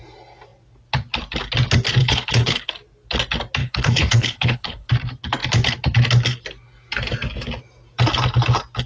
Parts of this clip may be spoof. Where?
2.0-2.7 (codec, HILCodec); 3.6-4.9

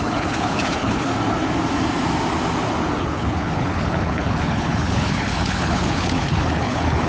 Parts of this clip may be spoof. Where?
0.0-1.1 (codec, HILCodec); 3.0-7.1